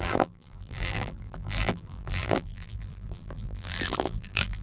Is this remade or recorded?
remade